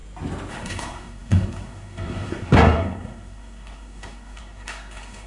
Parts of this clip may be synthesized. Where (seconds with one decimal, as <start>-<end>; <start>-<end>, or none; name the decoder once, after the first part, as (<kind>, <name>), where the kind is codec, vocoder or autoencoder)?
0.5-5.3 (codec, SNAC)